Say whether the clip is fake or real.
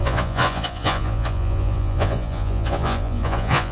fake